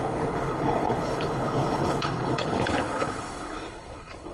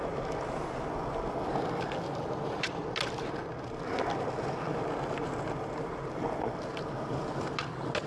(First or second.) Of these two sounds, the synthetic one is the first